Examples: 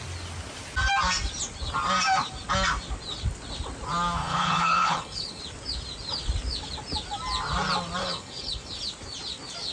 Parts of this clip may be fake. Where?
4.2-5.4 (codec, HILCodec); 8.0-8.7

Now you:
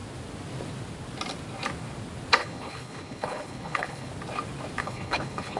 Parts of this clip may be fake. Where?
2.4-4.1 (codec, HILCodec); 4.8-5.6

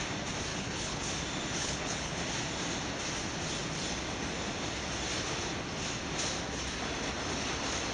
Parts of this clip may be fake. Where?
0.5-1.0 (codec, HILCodec); 1.6-2.1